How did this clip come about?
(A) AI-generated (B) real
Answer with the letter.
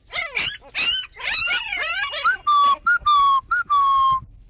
B